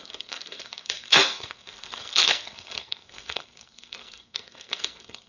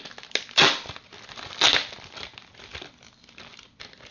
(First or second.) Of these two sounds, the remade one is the first